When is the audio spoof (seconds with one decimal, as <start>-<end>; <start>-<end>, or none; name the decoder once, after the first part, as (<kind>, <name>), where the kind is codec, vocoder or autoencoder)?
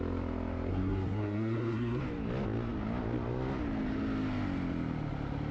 0.7-2.0 (codec, SNAC)